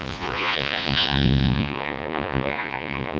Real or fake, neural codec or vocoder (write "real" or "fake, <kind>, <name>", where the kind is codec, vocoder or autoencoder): fake, vocoder, Vocos